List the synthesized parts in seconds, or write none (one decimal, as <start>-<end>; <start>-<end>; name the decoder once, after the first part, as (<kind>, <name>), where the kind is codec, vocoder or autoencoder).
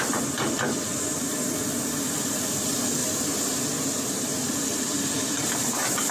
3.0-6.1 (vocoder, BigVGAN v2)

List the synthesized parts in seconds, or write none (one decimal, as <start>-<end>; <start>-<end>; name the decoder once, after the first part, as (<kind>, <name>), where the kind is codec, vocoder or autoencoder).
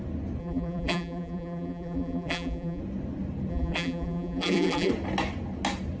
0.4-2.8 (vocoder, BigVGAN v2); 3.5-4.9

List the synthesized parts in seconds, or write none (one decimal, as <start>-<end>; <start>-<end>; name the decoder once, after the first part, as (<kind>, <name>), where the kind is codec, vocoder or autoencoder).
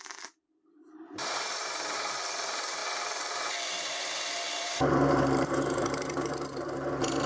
0.0-2.8 (vocoder, BigVGAN v2); 3.8-7.3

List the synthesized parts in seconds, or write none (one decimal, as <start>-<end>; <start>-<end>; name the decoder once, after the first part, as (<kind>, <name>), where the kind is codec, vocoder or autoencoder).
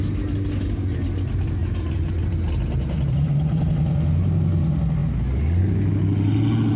1.6-3.7 (vocoder, BigVGAN v2)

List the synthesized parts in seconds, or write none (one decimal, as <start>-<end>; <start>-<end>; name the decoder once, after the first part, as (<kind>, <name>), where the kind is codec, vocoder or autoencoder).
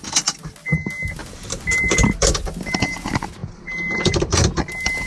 1.2-2.3 (vocoder, BigVGAN v2)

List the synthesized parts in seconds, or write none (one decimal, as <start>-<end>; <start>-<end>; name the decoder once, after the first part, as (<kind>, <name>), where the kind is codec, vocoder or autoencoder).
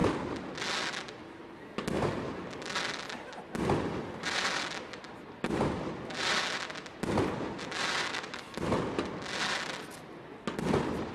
none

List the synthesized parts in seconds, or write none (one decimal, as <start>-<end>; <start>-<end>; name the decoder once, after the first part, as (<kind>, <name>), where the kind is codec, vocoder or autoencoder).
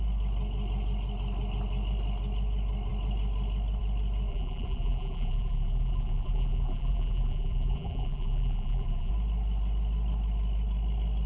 4.3-9.1 (vocoder, BigVGAN v2)